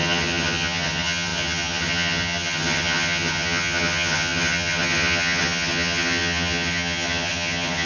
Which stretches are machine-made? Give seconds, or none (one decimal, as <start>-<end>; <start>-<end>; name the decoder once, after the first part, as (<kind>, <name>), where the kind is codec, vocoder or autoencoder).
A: 0.0-7.9 (vocoder, HiFi-GAN)

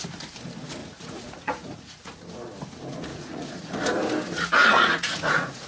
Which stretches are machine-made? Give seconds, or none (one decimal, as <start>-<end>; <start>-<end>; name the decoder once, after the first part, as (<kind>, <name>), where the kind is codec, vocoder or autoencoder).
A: 0.8-2.2 (vocoder, Vocos); 3.1-3.7; 4.6-5.7

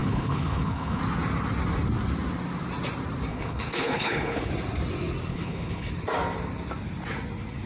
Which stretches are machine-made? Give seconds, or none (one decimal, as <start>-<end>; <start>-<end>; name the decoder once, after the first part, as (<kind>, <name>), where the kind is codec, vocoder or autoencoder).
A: 0.0-1.0 (codec, HILCodec); 3.3-4.5; 5.3-5.9

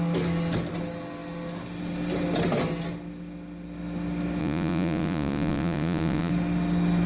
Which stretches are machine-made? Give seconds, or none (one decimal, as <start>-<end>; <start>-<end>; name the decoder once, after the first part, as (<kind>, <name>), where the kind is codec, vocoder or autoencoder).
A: 4.4-6.3 (vocoder, Vocos)